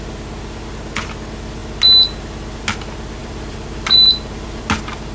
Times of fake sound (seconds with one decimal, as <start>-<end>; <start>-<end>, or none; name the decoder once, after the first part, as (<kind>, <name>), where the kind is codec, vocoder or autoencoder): 3.2-4.6 (vocoder, BigVGAN v2)